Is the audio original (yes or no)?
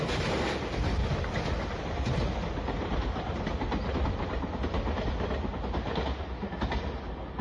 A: yes